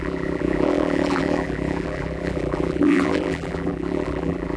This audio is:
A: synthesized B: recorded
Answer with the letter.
A